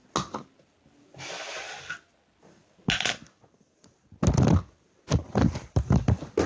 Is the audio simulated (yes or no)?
no